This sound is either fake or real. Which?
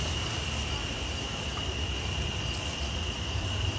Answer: fake